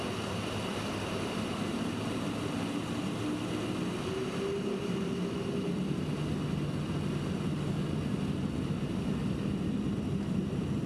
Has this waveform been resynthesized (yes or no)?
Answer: no